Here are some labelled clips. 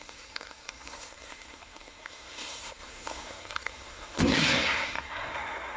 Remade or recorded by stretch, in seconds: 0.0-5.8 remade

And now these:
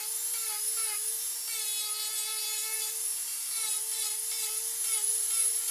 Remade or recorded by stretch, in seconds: 0.0-2.3 recorded; 2.3-5.7 remade

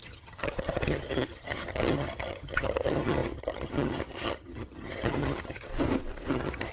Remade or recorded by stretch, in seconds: 0.0-5.7 remade; 5.7-6.3 recorded; 6.3-6.7 remade

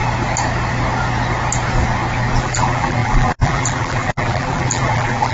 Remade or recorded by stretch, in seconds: 0.0-2.4 recorded; 2.4-5.3 remade